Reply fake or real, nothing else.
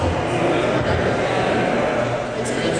real